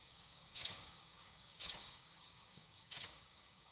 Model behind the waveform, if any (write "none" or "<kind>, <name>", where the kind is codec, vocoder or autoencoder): codec, DAC